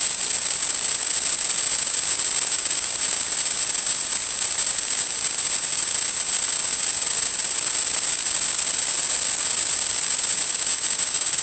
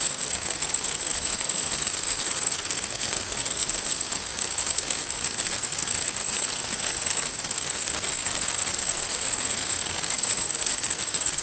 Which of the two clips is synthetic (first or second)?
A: second